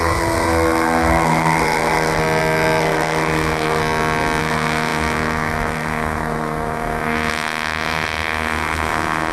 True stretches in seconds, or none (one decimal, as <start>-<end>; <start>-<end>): 2.2-2.8; 3.8-4.4

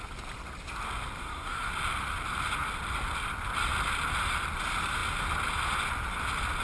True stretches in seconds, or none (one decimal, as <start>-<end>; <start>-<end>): 0.0-1.2; 1.7-6.6

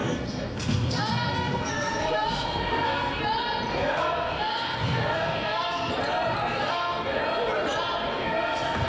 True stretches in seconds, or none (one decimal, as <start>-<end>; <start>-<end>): 3.2-3.7; 5.9-6.4; 7.2-8.1

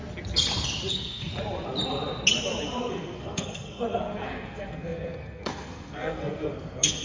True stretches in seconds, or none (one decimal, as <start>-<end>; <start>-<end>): 0.0-0.9; 1.3-2.9

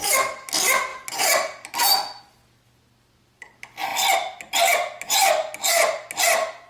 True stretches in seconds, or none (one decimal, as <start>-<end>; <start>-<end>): 0.0-6.7

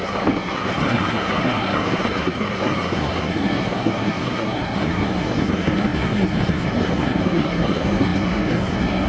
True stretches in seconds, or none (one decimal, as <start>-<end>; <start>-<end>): none